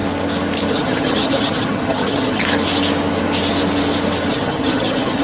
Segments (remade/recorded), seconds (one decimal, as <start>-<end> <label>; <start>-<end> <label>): 0.0-0.7 recorded; 0.7-2.4 remade; 2.4-4.3 recorded; 4.3-5.2 remade